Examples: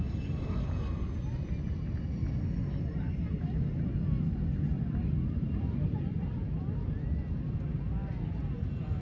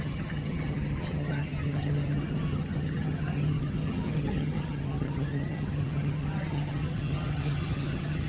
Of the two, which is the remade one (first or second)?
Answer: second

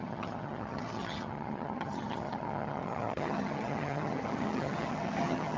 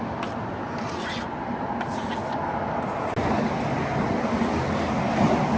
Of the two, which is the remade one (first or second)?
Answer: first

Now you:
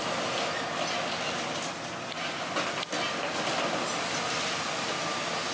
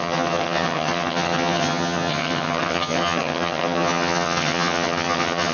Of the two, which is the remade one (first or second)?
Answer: second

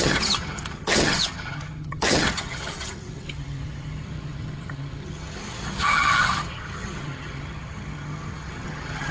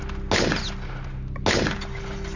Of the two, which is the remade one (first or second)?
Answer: first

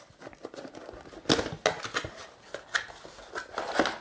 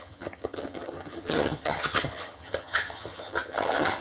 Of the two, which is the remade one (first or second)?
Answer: second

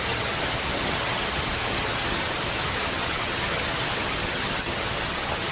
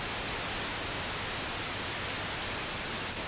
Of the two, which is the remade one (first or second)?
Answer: first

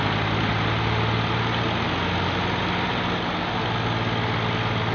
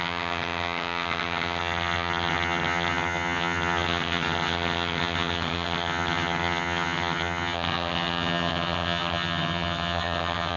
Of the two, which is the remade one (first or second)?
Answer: second